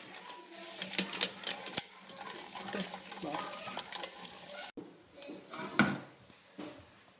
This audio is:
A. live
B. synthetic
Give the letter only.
A